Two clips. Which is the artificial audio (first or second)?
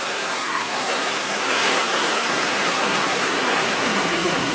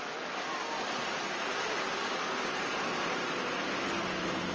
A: first